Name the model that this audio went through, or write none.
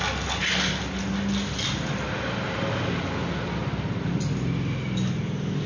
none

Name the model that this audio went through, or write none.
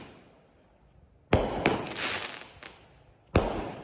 none